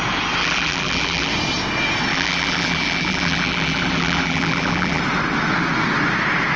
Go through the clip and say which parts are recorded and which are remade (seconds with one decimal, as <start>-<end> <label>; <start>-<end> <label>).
0.0-0.4 recorded; 0.4-1.3 remade; 1.3-2.1 recorded; 2.1-5.0 remade; 5.0-6.6 recorded